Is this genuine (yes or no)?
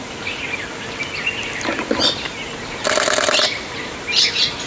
yes